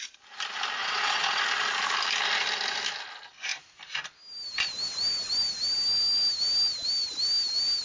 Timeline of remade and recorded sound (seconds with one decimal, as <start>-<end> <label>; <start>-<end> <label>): 0.0-0.8 recorded; 0.8-1.4 remade; 1.4-7.8 recorded